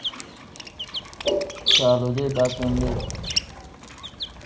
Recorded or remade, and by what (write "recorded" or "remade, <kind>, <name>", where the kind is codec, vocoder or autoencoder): recorded